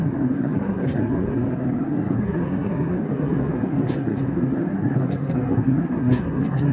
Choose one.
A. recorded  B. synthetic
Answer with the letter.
B